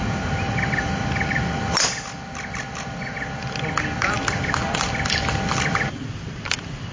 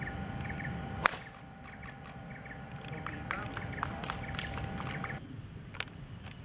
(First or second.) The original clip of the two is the first